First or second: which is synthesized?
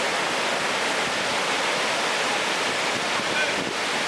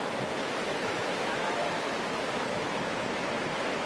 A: second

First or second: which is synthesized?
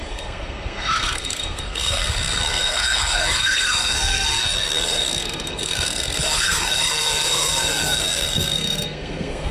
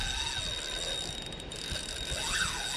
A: first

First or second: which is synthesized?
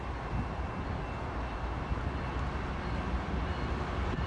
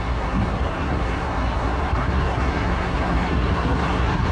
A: second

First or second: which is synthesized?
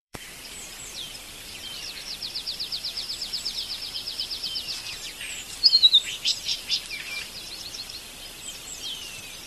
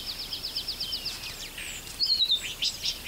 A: first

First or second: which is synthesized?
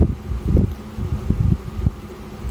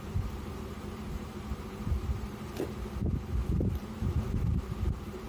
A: second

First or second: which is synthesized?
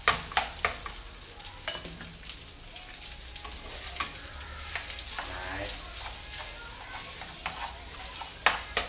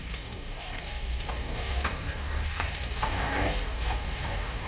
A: second